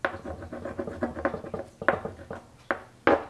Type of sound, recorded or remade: recorded